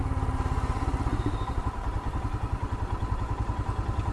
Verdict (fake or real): real